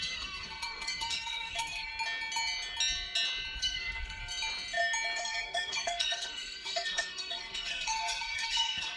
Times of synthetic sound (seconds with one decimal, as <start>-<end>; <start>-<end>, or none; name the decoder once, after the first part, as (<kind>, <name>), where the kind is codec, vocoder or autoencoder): 0.0-1.9 (codec, SNAC); 3.6-4.2; 5.2-9.0